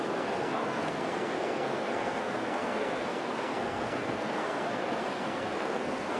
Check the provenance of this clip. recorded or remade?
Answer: remade